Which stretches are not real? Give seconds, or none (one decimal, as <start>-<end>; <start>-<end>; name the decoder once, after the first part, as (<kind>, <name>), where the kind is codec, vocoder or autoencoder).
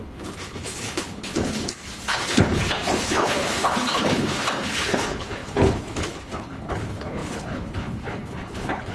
0.0-8.9 (codec, HILCodec)